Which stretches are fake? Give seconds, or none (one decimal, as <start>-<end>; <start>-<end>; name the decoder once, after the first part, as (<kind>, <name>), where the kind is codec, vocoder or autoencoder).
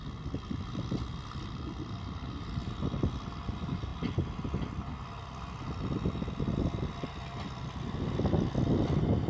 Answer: none